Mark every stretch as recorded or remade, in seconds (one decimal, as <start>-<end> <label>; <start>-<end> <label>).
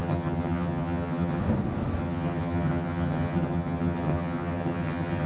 0.0-1.4 remade; 1.4-2.0 recorded; 2.0-5.3 remade